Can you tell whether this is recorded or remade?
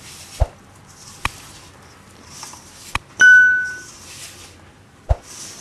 recorded